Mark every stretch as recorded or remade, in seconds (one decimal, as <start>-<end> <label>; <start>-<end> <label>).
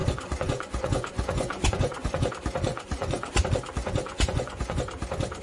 0.0-2.3 remade; 2.3-2.7 recorded; 2.7-3.3 remade; 3.3-3.8 recorded; 3.8-4.8 remade; 4.8-5.4 recorded